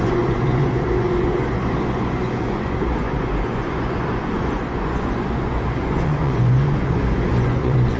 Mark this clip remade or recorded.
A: remade